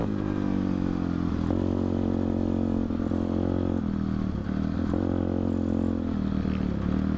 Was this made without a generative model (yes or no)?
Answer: yes